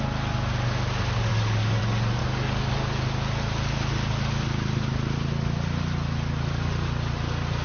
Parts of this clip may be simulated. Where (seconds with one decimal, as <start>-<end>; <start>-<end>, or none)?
1.3-1.8; 2.2-2.7